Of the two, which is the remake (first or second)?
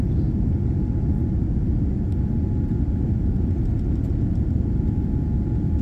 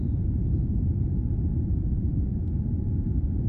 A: second